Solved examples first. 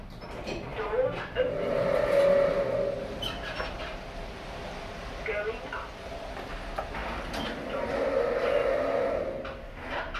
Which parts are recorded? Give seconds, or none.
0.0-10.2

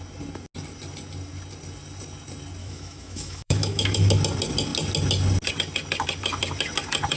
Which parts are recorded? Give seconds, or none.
0.0-2.6; 4.2-7.2

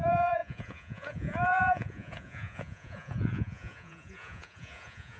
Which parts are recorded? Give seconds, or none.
none

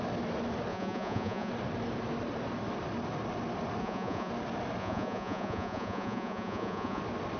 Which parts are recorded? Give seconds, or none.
0.0-0.7; 1.5-3.8; 4.3-4.8; 7.0-7.4

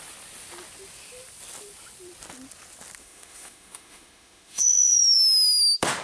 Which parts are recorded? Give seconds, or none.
0.0-3.0; 5.2-6.0